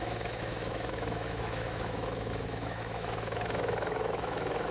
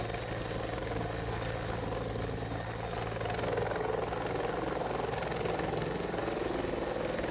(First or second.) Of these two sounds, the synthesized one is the first